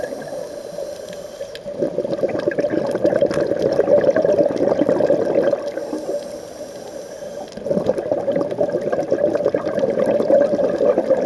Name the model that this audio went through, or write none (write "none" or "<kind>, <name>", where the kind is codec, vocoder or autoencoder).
none